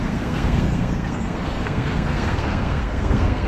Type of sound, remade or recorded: remade